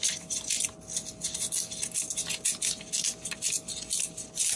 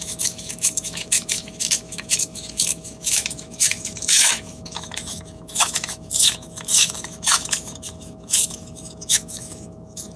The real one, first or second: first